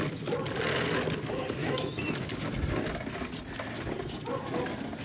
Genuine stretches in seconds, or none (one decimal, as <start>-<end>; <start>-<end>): 0.0-1.6; 2.3-5.0